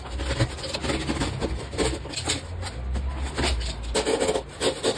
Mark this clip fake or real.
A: real